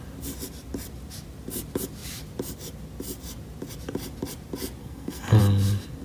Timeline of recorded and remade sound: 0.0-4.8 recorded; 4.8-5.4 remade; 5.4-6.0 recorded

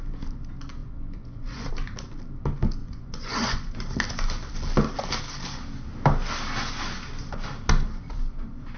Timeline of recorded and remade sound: 0.0-0.8 recorded; 0.8-1.7 remade; 1.7-2.8 recorded; 2.8-3.8 remade; 3.8-8.8 recorded

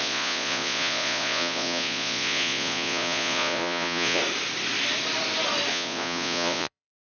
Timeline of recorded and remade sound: 0.0-4.2 remade; 4.2-5.7 recorded; 5.7-7.0 remade